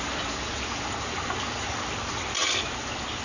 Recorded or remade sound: recorded